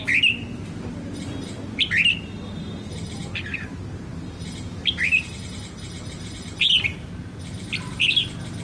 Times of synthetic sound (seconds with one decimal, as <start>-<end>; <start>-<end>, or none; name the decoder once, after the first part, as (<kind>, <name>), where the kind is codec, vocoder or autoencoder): none